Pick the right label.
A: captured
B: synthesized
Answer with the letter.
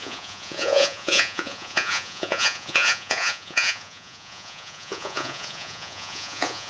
B